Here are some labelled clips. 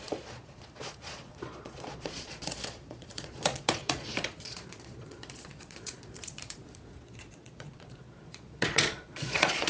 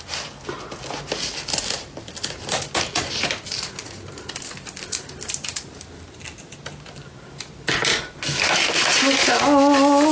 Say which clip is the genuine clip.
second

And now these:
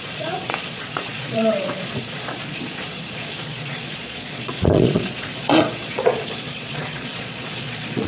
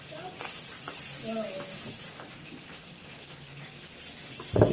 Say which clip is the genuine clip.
second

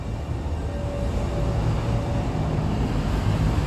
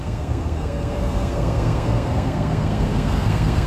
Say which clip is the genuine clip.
first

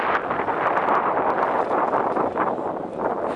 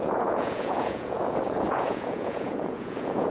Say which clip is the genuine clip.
first